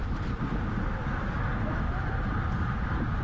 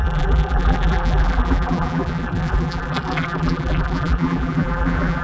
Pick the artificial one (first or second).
second